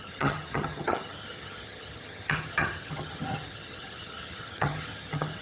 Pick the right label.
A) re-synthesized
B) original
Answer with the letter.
A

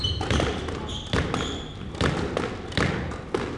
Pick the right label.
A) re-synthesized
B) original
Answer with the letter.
B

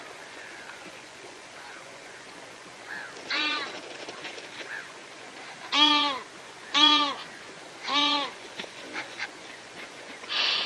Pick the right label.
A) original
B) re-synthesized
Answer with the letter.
B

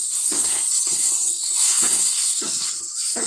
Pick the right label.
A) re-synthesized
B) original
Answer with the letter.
A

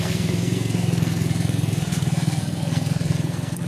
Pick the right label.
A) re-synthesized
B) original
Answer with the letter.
A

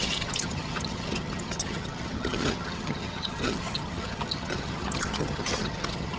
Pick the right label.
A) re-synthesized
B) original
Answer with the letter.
A